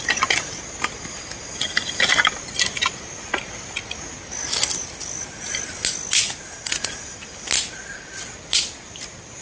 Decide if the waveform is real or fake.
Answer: real